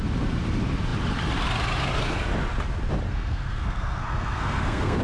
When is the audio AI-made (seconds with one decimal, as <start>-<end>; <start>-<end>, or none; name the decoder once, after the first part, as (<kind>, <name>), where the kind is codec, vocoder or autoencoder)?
3.1-5.0 (codec, SNAC)